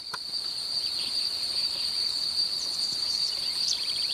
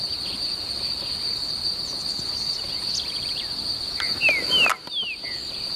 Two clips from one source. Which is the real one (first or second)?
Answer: second